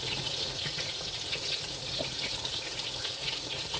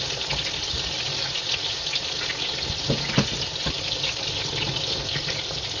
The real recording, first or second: second